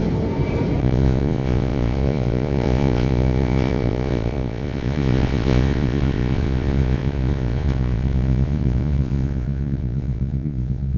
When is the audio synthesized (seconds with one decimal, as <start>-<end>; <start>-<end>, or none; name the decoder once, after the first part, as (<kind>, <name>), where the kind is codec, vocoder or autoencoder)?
0.8-11.0 (vocoder, Vocos)